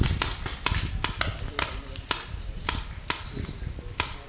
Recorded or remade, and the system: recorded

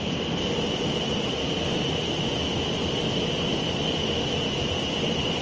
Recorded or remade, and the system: recorded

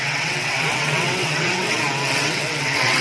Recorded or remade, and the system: remade, vocoder, WaveNeXt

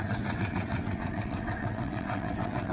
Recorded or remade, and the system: remade, vocoder, WaveNeXt